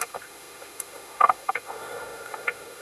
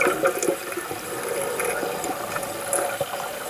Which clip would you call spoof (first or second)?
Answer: first